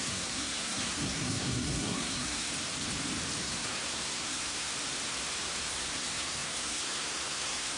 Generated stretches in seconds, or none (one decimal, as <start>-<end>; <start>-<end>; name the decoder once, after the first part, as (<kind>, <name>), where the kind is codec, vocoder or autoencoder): 0.0-2.5 (codec, SNAC); 3.4-4.7; 5.7-7.8